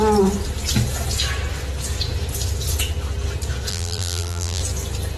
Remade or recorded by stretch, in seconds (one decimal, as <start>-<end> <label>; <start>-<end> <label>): 0.0-3.7 recorded; 3.7-4.6 remade; 4.6-5.2 recorded

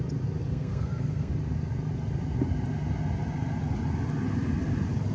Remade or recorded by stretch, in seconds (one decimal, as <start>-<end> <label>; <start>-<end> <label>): 0.0-0.4 recorded; 0.4-1.3 remade; 1.3-5.1 recorded

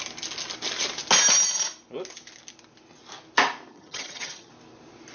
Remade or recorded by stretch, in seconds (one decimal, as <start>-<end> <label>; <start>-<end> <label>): 0.0-3.7 recorded; 3.7-4.5 remade; 4.5-5.1 recorded

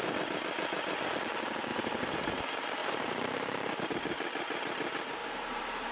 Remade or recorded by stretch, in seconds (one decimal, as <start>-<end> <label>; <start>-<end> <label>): 0.0-1.7 recorded; 1.7-2.4 remade; 2.4-2.8 recorded; 2.8-3.9 remade; 3.9-5.2 recorded; 5.2-5.9 remade

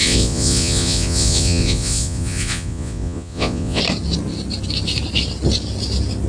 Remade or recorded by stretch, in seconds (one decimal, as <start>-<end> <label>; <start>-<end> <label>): 0.0-3.8 remade; 3.8-6.3 recorded

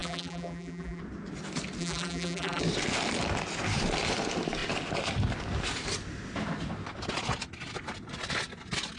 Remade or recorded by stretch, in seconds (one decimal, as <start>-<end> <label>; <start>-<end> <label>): 0.0-1.0 remade; 1.0-1.8 recorded; 1.8-2.6 remade; 2.6-9.0 recorded

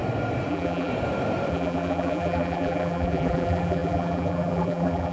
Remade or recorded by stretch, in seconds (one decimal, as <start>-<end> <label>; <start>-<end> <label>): 0.0-0.5 recorded; 0.5-0.9 remade; 0.9-1.5 recorded; 1.5-5.1 remade

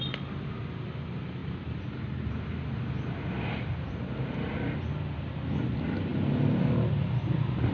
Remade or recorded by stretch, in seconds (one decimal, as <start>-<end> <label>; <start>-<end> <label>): 0.0-1.4 recorded; 1.4-3.9 remade; 3.9-7.7 recorded